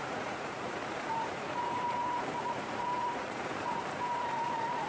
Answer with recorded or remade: remade